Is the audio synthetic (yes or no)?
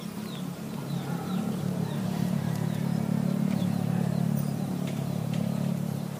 yes